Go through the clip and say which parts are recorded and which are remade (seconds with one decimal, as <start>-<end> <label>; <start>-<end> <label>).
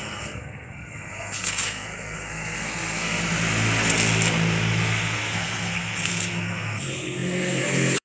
0.0-3.2 remade; 3.2-4.8 recorded; 4.8-8.0 remade